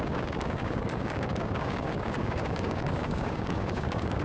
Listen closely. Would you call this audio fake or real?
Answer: fake